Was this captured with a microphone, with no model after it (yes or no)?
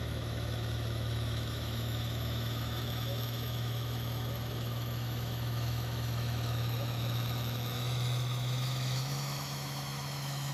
no